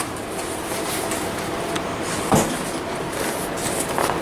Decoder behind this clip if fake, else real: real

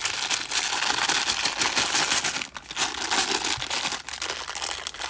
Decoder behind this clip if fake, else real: real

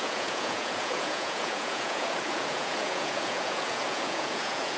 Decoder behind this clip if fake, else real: fake, vocoder, Vocos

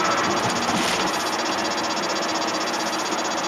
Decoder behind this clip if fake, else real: real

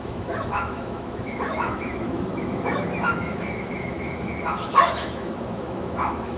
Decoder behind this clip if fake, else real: fake, autoencoder, DAC-VAE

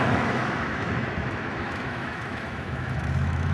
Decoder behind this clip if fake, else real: fake, autoencoder, DAC-VAE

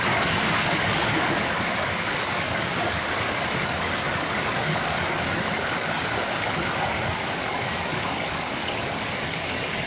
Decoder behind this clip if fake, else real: fake, codec, DAC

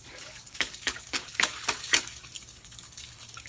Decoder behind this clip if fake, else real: fake, codec, DAC